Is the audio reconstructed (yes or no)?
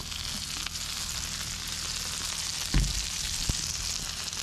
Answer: no